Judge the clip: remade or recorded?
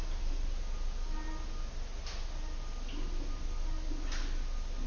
recorded